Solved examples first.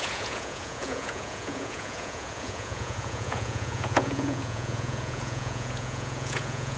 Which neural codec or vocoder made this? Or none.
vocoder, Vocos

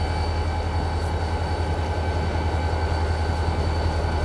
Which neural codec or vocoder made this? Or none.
none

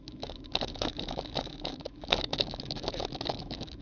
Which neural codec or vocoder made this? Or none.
autoencoder, DAC-VAE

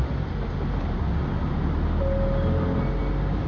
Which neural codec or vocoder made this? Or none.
none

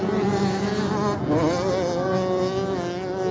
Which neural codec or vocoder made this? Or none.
none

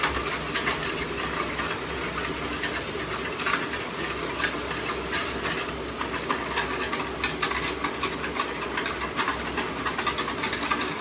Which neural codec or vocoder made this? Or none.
none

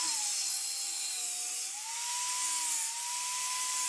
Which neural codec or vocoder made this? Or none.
none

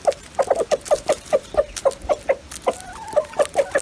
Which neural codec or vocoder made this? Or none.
none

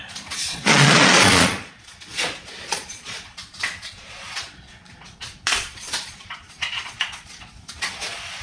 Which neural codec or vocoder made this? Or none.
vocoder, Vocos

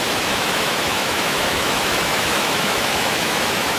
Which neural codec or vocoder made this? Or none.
autoencoder, DAC-VAE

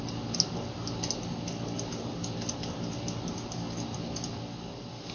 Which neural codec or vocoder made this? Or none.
none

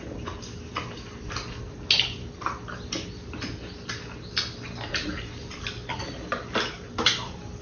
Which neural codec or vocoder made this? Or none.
none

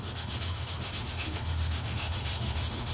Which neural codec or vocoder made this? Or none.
autoencoder, DAC-VAE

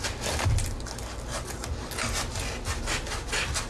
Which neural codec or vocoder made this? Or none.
none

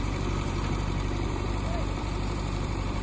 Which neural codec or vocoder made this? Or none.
vocoder, BigVGAN v2